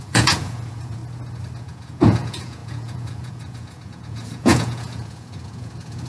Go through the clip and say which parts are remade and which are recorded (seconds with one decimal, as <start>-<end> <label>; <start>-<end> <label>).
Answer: 0.0-1.0 remade; 1.0-1.6 recorded; 1.6-6.1 remade